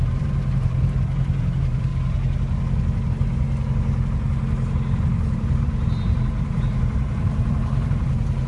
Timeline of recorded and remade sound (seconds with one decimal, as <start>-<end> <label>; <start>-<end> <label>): 0.0-1.9 remade; 1.9-5.6 recorded; 5.6-8.5 remade